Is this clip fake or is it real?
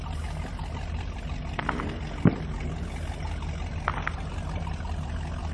real